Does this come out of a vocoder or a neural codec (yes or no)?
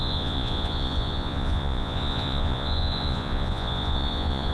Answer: yes